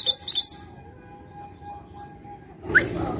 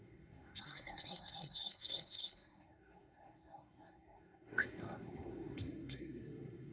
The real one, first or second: first